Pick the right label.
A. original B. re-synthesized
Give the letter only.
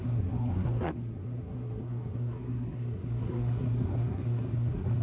B